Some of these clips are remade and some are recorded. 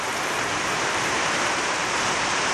remade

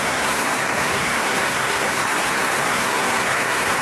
remade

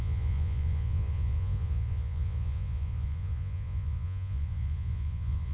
remade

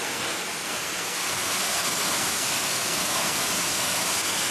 remade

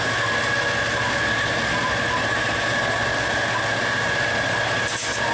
recorded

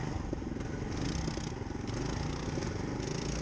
recorded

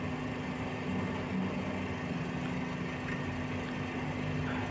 recorded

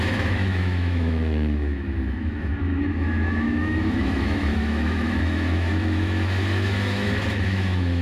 remade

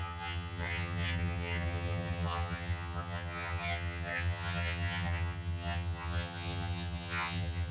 remade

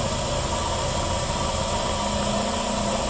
recorded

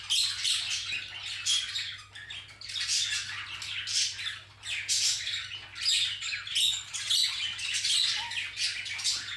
recorded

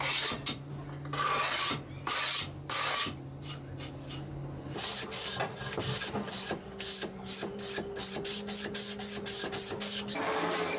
recorded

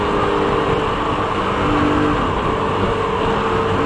recorded